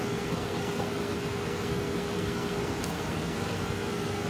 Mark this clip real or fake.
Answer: fake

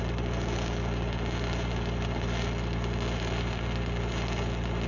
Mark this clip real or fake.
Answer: real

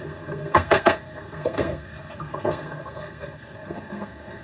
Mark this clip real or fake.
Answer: fake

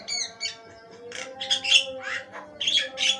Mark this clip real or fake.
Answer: real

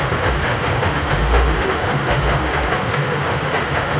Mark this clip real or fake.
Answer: fake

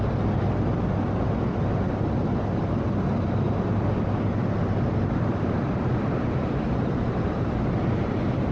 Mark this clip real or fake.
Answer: real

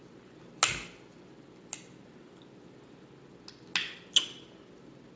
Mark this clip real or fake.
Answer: real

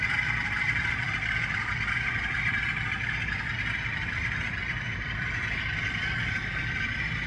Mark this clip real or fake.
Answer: fake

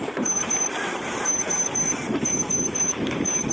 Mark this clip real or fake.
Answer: fake